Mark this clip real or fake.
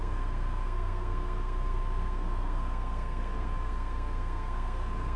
fake